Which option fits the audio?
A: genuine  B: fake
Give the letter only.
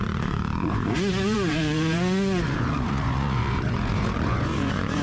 B